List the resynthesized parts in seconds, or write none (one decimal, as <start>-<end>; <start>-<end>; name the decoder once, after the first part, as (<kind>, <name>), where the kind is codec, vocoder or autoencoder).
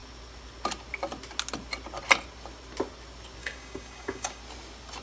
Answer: 3.4-4.4 (codec, DAC)